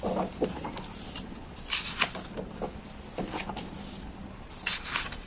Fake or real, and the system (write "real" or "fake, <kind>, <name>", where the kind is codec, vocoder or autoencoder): real